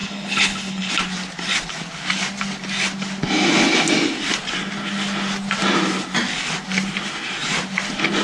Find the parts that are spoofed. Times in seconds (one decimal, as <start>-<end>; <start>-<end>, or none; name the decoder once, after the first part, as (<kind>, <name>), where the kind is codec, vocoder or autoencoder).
0.0-0.9 (codec, HILCodec)